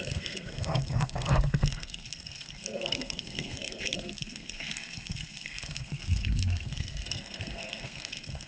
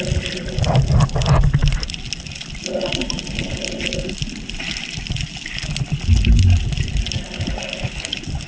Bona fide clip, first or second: second